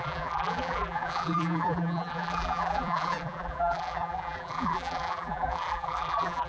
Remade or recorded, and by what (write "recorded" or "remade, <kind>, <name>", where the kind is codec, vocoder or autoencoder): remade, vocoder, BigVGAN v2